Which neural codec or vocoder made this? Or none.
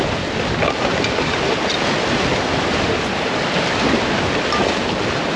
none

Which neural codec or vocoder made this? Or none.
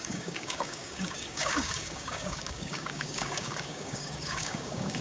codec, DAC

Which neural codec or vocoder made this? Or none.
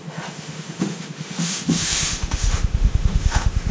autoencoder, DAC-VAE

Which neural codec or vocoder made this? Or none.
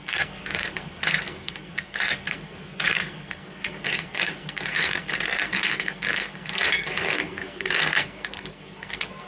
codec, SNAC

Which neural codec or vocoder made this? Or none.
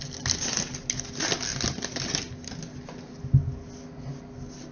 none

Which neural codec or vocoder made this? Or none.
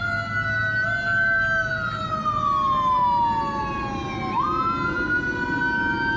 none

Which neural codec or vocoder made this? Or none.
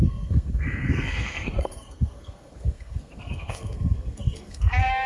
codec, SNAC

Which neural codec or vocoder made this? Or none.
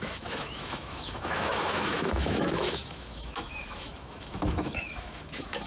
autoencoder, DAC-VAE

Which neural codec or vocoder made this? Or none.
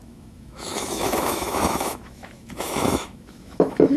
autoencoder, DAC-VAE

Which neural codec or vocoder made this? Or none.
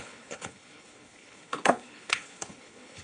codec, HILCodec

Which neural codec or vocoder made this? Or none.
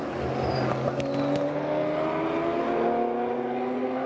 none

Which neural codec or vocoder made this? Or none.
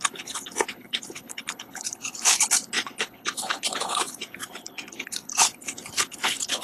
codec, HILCodec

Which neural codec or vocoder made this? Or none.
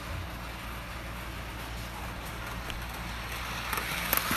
none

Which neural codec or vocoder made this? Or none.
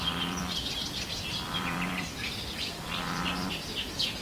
vocoder, BigVGAN v2